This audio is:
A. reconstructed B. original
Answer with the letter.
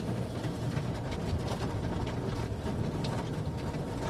B